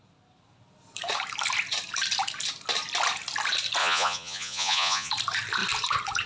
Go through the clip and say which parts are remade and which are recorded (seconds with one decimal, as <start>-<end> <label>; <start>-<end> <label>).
0.0-3.8 recorded; 3.8-5.1 remade; 5.1-6.3 recorded